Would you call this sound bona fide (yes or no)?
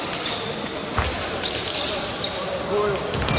yes